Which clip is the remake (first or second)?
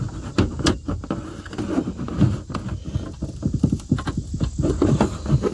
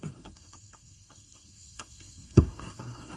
second